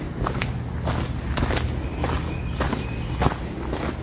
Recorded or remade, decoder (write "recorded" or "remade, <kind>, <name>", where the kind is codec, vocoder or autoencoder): recorded